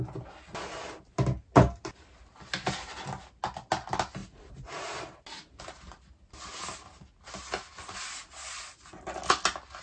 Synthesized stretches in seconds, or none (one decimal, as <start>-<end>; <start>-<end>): 4.2-5.0